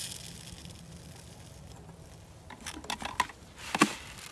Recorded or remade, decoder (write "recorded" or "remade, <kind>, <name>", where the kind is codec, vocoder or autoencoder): recorded